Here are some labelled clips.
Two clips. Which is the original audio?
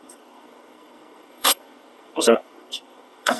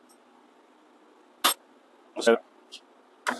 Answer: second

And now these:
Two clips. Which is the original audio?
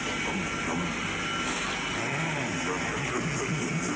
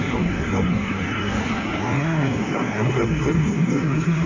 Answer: first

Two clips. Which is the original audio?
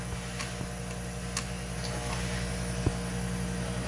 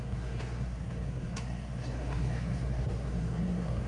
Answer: first